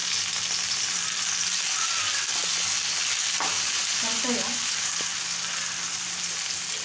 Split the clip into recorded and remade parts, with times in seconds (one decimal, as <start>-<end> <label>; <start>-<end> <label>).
0.0-6.8 recorded